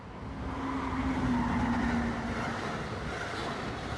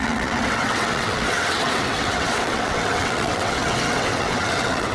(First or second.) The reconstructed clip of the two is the second